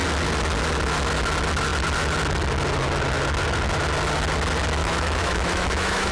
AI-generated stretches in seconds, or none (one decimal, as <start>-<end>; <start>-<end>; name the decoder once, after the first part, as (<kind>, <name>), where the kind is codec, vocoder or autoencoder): 4.8-6.1 (autoencoder, DAC-VAE)